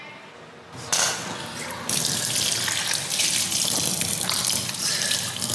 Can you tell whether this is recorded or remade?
recorded